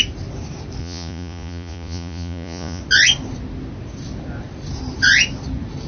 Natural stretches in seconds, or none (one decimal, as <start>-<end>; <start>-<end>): 0.0-0.8; 2.8-5.9